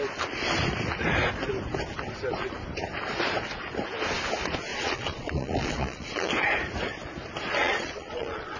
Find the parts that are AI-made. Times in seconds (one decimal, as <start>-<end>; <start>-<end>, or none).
4.7-6.3; 7.6-8.6